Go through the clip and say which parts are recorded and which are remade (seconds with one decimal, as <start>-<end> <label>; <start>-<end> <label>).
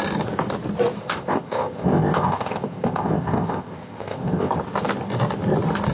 0.0-1.0 recorded; 1.0-4.5 remade; 4.5-5.9 recorded